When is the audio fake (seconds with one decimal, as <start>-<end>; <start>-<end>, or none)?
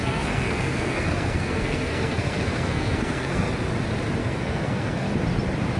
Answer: 0.0-3.5; 4.2-5.1